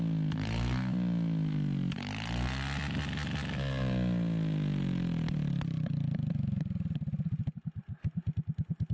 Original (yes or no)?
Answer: yes